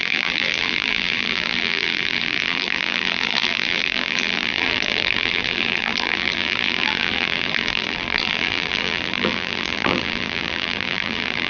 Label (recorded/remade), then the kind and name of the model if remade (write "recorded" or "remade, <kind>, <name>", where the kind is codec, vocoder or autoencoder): remade, vocoder, BigVGAN v2